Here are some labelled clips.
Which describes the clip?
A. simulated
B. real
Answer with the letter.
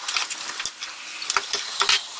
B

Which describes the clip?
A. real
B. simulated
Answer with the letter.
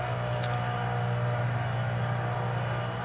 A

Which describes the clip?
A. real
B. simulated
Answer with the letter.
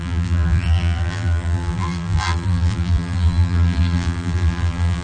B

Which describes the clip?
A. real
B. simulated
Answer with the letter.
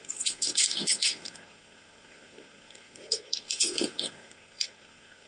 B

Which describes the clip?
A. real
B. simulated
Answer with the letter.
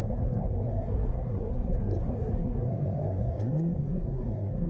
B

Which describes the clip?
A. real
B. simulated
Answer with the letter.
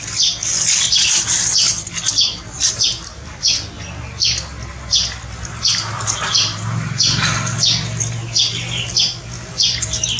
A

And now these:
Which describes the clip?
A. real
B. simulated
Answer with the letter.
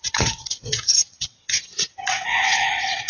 B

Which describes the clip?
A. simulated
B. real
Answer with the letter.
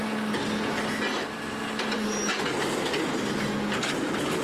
B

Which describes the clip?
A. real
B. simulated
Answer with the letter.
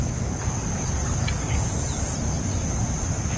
A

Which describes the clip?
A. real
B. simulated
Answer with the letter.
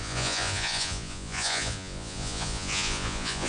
B